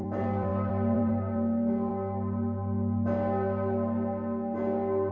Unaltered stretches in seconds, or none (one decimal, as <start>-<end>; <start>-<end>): 1.9-5.1